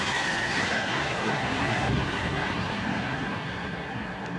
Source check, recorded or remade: remade